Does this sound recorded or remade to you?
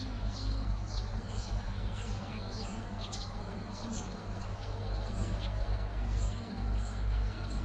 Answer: remade